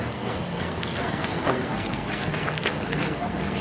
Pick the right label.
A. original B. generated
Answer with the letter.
B